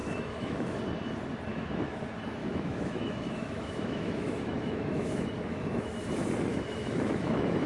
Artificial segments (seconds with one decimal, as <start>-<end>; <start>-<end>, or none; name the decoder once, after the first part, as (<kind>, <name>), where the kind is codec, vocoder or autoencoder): 0.0-0.8 (autoencoder, DAC-VAE); 1.5-2.0; 2.4-6.0; 6.5-7.7